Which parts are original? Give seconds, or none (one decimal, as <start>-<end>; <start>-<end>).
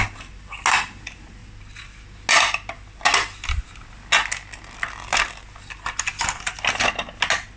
0.0-7.6